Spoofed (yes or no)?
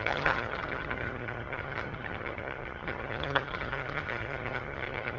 yes